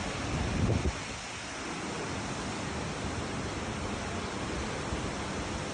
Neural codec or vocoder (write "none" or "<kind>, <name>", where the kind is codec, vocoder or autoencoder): none